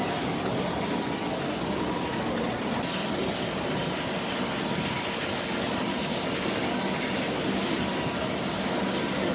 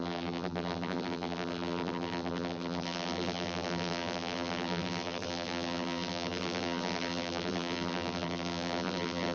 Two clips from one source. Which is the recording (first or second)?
first